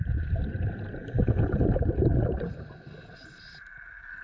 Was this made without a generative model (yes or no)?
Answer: yes